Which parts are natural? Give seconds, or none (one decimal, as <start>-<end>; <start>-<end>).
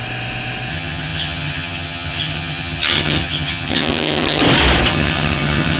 0.0-0.7; 4.4-4.9